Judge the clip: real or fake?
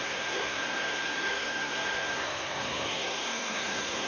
fake